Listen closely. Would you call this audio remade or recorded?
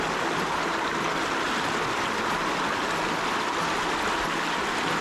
recorded